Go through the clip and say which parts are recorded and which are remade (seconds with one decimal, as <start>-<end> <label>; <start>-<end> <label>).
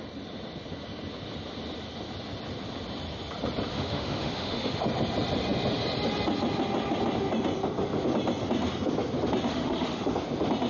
0.0-3.7 recorded; 3.7-4.8 remade; 4.8-9.5 recorded; 9.5-10.1 remade; 10.1-10.7 recorded